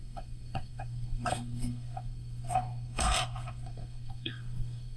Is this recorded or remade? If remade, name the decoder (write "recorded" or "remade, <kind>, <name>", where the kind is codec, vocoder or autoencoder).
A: remade, codec, SNAC